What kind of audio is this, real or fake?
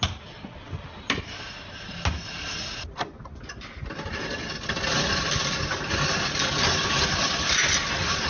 real